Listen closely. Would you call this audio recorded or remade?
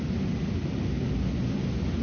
recorded